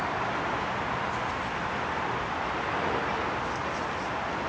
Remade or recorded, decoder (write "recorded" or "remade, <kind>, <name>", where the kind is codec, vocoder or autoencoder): recorded